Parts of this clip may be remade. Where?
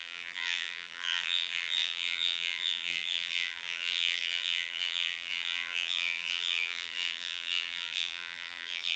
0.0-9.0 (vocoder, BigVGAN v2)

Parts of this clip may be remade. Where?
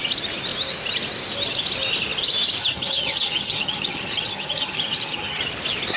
2.6-5.4 (vocoder, HiFi-GAN)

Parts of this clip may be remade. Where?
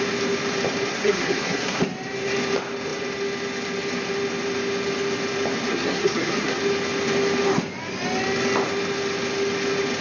0.9-1.8 (codec, SNAC); 5.7-6.6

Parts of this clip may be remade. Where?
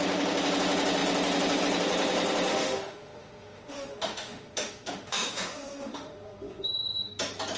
2.5-7.1 (autoencoder, DAC-VAE)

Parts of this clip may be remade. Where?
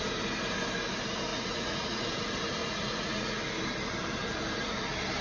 1.3-2.0 (vocoder, Vocos); 2.6-3.4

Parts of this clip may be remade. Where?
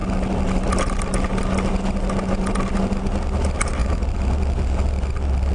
3.8-4.3 (vocoder, BigVGAN v2)